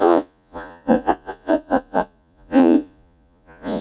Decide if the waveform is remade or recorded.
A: remade